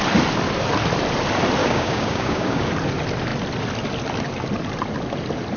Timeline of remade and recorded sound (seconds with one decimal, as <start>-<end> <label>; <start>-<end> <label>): 0.0-1.6 recorded; 1.6-2.7 remade; 2.7-5.6 recorded